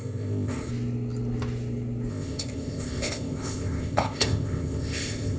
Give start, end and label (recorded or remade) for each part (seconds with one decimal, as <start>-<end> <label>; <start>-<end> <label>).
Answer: 0.0-0.7 remade; 0.7-2.1 recorded; 2.1-5.4 remade